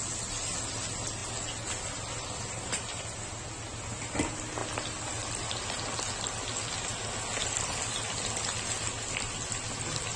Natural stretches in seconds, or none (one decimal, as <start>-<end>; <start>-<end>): 0.0-10.2